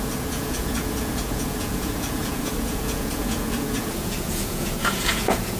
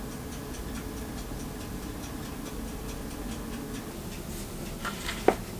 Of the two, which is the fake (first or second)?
first